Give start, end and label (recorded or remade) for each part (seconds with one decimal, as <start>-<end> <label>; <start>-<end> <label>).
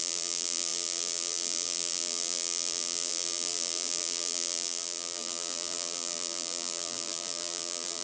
0.0-8.0 remade